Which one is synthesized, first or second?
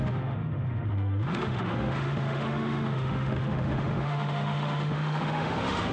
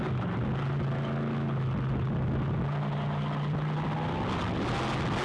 first